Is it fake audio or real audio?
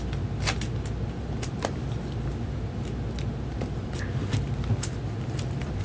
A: real